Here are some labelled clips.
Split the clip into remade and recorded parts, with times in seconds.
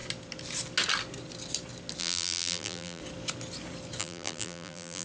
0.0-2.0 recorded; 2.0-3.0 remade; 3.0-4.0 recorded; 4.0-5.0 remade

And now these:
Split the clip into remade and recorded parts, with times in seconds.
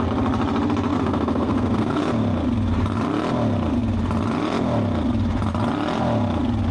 0.0-0.9 recorded; 0.9-2.0 remade; 2.0-6.7 recorded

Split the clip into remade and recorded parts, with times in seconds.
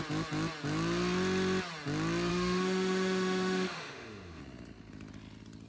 0.0-2.3 recorded; 2.3-4.4 remade; 4.4-5.7 recorded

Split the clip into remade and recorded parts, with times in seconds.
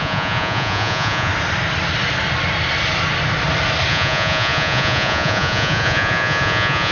0.0-1.3 remade; 1.3-3.9 recorded; 3.9-6.9 remade